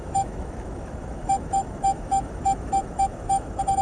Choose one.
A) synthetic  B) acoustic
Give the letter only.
A